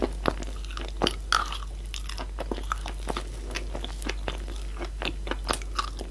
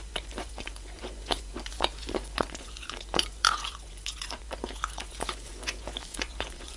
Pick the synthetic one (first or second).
second